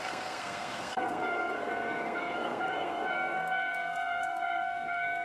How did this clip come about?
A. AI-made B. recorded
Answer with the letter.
A